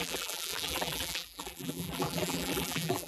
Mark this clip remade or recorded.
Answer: remade